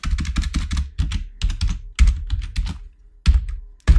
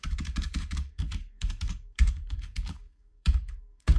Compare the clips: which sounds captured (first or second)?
first